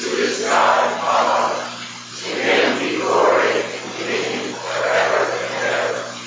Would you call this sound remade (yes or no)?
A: no